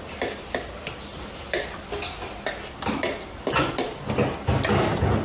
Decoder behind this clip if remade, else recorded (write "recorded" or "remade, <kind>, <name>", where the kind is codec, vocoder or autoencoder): recorded